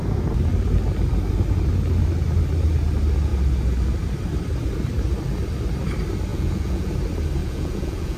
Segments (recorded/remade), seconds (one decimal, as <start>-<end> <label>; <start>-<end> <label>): 0.0-6.3 recorded; 6.3-6.9 remade; 6.9-7.4 recorded; 7.4-8.2 remade

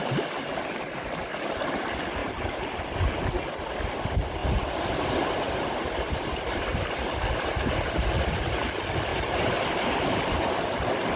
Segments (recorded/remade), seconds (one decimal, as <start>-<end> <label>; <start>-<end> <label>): 0.0-2.2 recorded; 2.2-2.8 remade; 2.8-9.1 recorded; 9.1-9.9 remade; 9.9-11.2 recorded

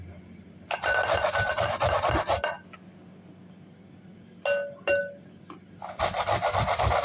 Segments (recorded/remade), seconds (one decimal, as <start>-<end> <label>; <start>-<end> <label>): 0.0-7.0 recorded

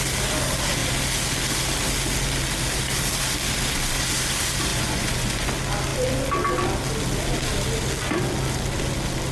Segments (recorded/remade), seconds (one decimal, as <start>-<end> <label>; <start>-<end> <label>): 0.0-4.7 recorded; 4.7-5.5 remade; 5.5-9.3 recorded

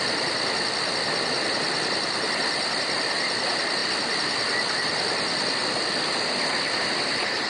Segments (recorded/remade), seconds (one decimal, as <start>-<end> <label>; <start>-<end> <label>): 0.0-7.5 recorded